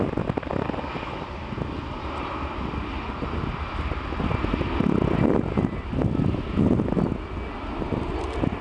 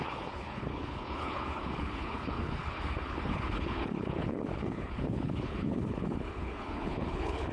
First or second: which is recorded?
first